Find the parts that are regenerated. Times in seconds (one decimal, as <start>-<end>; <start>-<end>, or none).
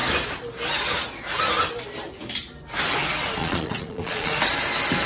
3.4-4.4